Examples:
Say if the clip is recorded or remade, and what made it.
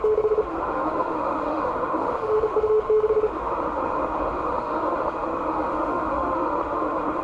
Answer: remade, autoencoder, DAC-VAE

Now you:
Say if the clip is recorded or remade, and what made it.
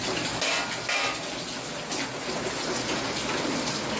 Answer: recorded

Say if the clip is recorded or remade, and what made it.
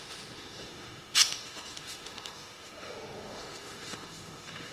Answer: remade, autoencoder, DAC-VAE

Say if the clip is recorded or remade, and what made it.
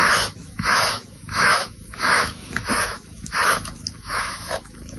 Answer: remade, autoencoder, DAC-VAE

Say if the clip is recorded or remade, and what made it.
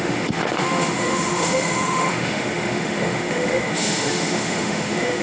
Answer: remade, autoencoder, DAC-VAE